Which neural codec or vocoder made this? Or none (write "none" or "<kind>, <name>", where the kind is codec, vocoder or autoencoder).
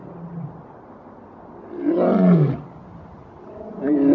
none